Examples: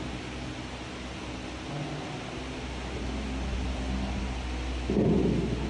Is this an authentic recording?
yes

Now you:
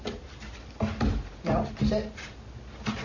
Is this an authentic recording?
yes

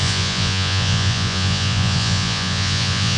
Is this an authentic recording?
no